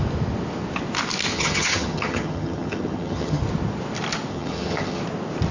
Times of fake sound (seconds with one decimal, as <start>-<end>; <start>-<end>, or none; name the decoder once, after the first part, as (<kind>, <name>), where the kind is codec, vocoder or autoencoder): 1.3-3.4 (vocoder, HiFi-GAN); 4.3-5.0